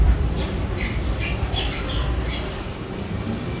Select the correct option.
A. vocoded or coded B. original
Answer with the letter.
B